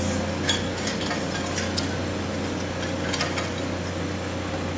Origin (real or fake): real